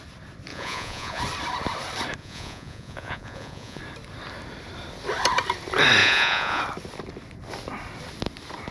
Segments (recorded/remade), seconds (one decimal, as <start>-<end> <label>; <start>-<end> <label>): 0.0-0.5 recorded; 0.5-1.2 remade; 1.2-2.2 recorded; 2.2-3.8 remade; 3.8-6.0 recorded; 6.0-6.6 remade; 6.6-8.7 recorded